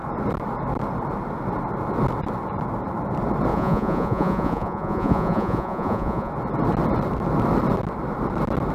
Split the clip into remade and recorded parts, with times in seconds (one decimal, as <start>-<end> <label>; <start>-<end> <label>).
0.0-3.5 recorded; 3.5-6.3 remade; 6.3-8.7 recorded